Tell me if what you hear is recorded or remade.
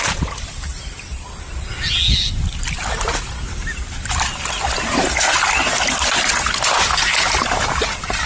recorded